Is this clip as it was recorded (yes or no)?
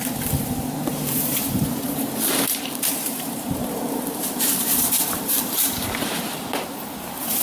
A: no